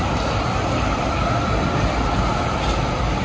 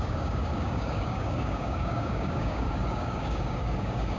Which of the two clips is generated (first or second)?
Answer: second